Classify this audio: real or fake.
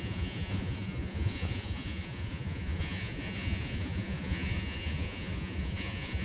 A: fake